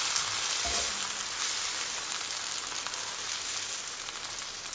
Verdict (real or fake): real